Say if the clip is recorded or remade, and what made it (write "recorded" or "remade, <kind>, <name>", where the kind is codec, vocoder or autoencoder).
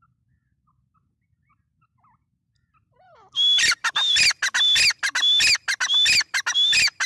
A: recorded